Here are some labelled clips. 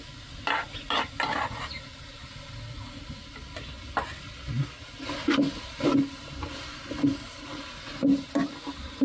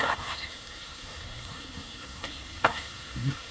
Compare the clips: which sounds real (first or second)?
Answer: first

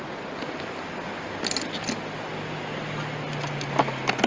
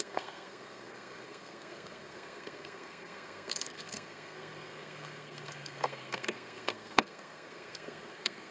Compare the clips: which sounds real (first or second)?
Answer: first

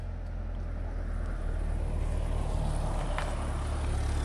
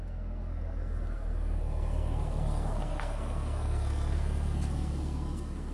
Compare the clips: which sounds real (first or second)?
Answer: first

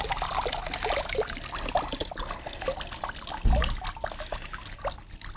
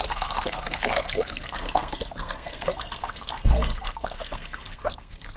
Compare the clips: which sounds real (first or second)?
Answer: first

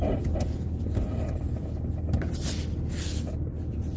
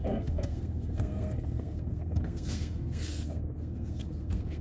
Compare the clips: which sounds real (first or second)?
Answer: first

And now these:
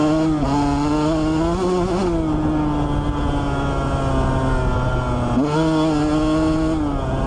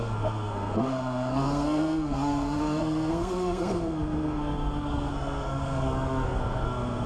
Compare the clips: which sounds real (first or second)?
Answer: first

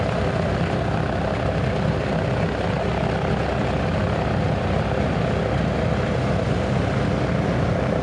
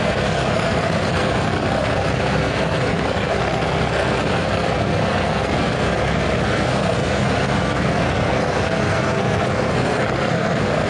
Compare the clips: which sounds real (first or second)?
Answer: first